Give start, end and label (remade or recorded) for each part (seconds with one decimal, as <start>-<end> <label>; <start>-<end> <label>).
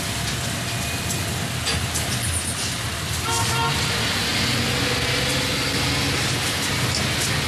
0.0-7.5 recorded